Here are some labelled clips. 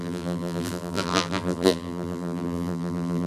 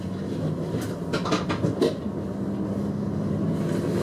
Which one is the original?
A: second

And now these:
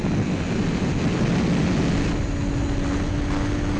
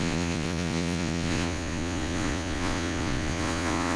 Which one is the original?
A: first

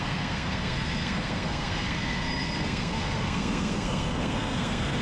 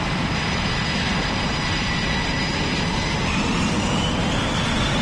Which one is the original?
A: second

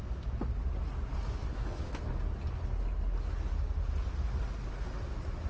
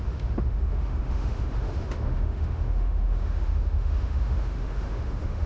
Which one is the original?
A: first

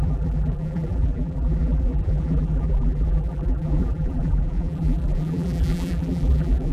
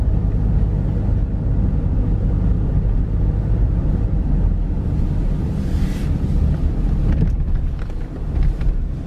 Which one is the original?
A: second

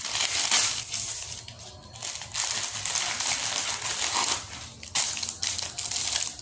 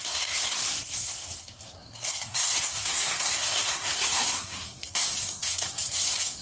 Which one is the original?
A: first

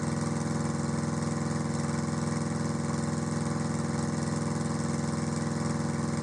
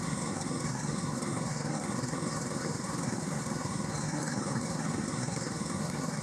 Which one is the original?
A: first